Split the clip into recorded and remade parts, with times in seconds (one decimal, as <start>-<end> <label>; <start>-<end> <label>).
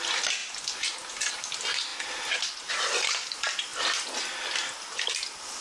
0.0-5.6 recorded